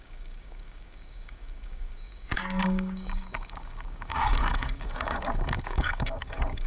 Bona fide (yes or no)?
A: no